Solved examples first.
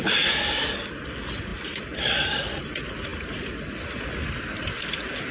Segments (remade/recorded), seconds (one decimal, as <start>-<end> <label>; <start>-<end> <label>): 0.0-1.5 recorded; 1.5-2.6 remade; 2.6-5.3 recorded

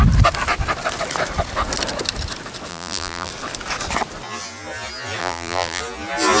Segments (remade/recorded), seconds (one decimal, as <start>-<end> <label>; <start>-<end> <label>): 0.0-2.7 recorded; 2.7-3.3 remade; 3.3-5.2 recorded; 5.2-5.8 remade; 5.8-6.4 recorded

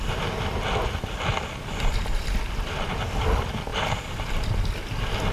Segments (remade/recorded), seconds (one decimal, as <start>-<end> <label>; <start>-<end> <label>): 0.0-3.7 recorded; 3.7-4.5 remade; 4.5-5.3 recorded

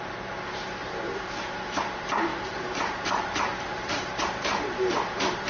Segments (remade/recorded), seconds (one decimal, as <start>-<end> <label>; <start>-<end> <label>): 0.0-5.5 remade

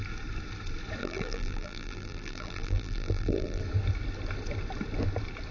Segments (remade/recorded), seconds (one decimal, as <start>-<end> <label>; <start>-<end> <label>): 0.0-1.0 recorded; 1.0-3.6 remade; 3.6-5.5 recorded

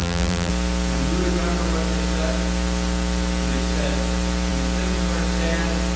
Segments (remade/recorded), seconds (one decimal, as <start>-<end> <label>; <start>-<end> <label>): 0.0-0.5 remade; 0.5-6.0 recorded

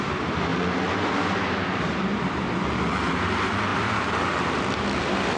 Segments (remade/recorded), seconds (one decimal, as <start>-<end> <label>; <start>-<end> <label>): 0.0-2.1 recorded; 2.1-2.6 remade; 2.6-3.7 recorded; 3.7-5.4 remade

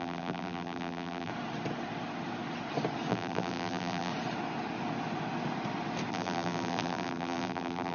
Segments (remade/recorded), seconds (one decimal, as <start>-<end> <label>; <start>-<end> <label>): 0.0-1.3 remade; 1.3-3.1 recorded; 3.1-4.1 remade; 4.1-6.1 recorded; 6.1-7.9 remade